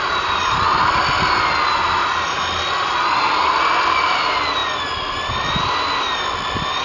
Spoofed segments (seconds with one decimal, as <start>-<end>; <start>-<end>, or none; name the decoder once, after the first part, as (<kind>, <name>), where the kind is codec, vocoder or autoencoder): none